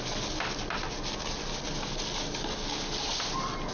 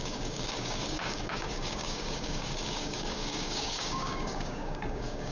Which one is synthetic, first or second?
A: second